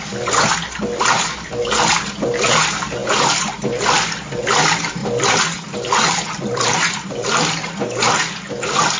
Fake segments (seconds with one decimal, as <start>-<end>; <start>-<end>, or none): none